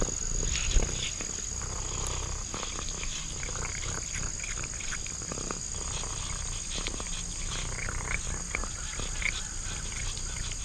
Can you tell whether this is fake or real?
real